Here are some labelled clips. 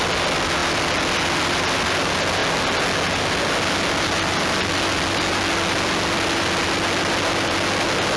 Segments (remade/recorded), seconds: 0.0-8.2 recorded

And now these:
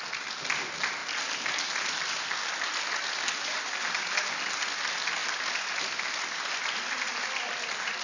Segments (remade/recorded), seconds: 0.0-8.0 recorded